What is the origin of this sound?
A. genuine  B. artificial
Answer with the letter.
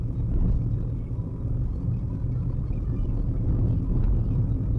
A